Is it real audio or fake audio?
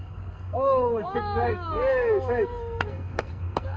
fake